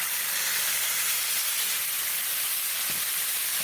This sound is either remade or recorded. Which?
remade